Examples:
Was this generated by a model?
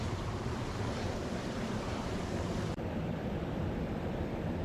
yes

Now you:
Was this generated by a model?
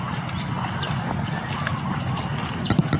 no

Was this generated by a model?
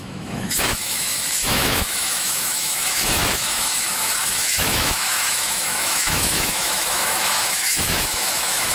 yes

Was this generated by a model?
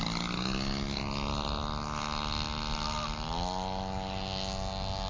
no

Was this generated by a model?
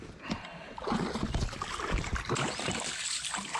no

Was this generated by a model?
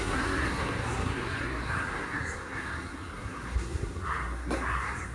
yes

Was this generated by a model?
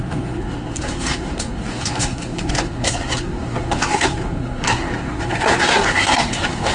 yes